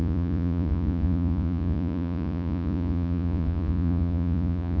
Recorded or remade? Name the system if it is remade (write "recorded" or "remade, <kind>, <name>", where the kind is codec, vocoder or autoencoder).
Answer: remade, vocoder, Vocos